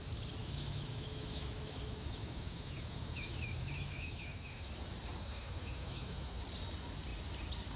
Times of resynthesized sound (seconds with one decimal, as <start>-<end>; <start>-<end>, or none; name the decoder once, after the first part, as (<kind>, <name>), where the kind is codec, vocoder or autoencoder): 0.4-4.7 (autoencoder, DAC-VAE); 5.2-6.4